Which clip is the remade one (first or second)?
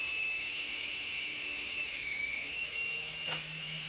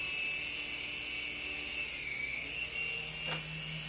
first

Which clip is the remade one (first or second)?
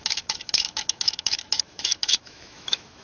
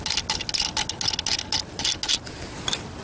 first